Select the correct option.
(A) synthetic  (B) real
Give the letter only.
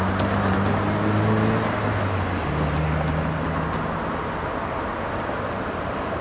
B